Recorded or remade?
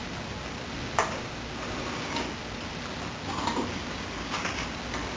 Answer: recorded